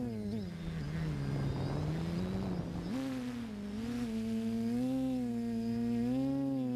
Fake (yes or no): no